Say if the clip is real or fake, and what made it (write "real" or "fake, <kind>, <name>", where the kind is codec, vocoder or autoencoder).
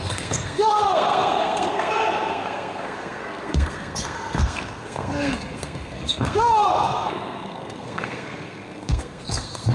fake, codec, SNAC